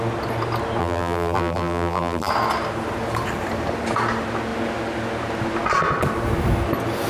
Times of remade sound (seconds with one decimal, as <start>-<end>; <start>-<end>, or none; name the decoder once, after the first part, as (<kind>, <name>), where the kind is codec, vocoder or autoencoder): 0.8-2.3 (vocoder, BigVGAN v2)